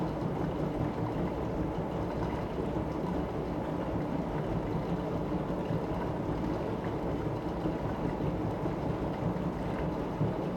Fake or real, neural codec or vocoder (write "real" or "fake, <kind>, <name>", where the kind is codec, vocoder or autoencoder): real